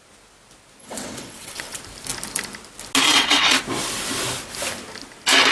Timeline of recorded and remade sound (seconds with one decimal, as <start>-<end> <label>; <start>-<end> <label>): 0.0-0.8 recorded; 0.8-1.8 remade; 1.8-3.1 recorded; 3.1-3.6 remade; 3.6-5.5 recorded